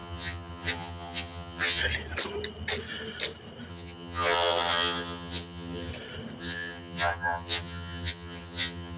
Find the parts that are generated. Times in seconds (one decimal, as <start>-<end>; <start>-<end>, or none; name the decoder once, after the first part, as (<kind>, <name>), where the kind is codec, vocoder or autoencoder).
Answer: 0.0-1.8 (vocoder, HiFi-GAN); 3.7-5.9; 6.4-9.0